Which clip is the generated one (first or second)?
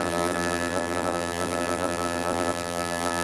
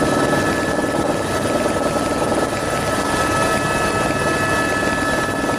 first